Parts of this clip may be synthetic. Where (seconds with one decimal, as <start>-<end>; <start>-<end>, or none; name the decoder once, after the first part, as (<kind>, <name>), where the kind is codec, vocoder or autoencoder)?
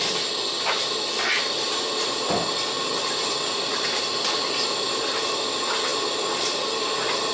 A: none